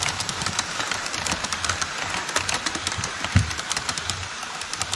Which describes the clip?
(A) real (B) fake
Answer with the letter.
B